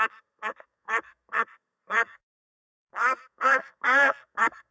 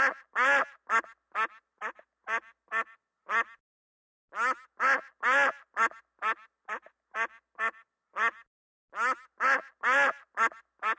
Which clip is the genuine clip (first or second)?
second